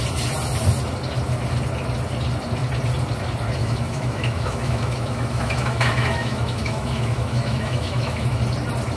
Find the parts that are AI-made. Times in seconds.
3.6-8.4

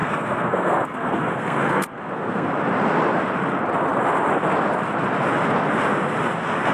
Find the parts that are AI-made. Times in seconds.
0.0-2.5